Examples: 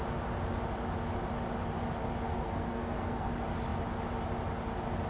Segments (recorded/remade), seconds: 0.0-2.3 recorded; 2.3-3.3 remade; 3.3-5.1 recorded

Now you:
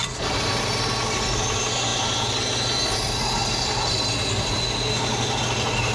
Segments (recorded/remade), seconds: 0.0-5.9 recorded